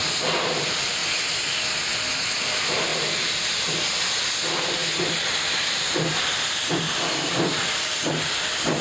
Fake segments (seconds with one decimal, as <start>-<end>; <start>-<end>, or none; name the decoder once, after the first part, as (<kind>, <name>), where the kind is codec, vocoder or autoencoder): 0.0-1.0 (vocoder, BigVGAN v2); 2.3-4.8; 6.7-8.0

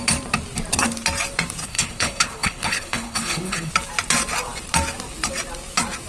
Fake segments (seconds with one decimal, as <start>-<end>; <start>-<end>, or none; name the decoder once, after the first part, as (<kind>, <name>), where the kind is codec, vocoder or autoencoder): 1.6-3.7 (codec, HILCodec)